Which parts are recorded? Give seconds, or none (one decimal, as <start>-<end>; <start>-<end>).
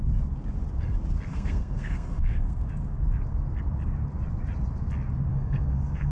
0.0-1.3; 2.7-5.3